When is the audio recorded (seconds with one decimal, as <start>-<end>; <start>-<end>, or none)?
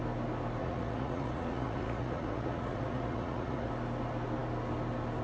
0.0-0.6; 3.7-5.2